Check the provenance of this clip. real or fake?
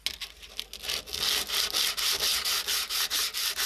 real